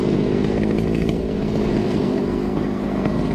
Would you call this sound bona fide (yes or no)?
no